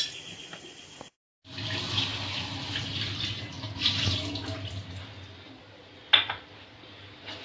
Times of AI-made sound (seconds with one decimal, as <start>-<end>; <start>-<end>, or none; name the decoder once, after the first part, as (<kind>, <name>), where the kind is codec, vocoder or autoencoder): none